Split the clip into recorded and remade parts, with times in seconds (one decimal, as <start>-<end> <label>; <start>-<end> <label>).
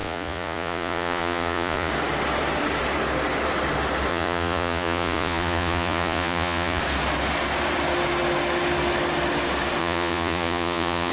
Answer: 0.0-1.9 remade; 1.9-4.1 recorded; 4.1-6.8 remade; 6.8-9.8 recorded; 9.8-11.1 remade